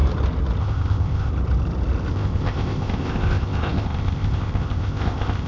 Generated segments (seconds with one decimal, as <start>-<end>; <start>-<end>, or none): 0.6-1.3; 2.1-5.5